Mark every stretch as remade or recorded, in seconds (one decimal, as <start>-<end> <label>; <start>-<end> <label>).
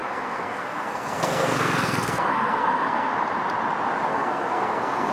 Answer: 0.0-3.1 remade; 3.1-4.1 recorded; 4.1-5.1 remade